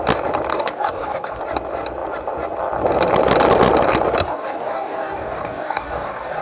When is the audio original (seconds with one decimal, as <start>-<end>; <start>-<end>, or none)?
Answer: 0.0-0.5; 1.4-4.2